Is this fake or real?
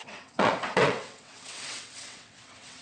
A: fake